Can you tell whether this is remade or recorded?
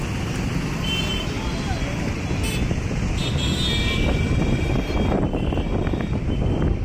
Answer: recorded